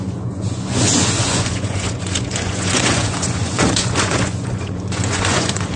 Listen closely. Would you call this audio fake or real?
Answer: fake